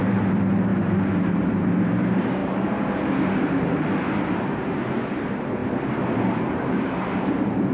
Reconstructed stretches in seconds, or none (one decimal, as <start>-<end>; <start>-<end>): 0.0-5.6; 6.4-7.7